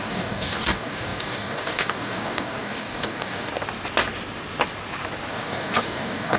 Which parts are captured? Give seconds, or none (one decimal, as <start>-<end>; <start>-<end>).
3.5-5.3